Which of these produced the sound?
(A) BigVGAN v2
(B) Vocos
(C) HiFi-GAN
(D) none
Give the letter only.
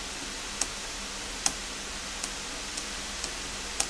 D